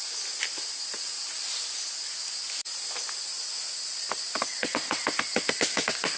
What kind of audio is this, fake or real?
real